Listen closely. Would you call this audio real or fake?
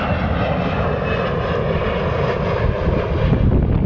real